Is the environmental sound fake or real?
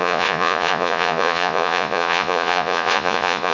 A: fake